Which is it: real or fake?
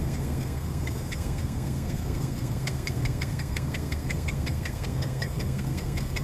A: fake